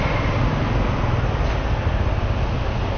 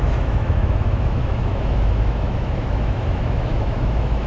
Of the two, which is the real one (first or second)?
first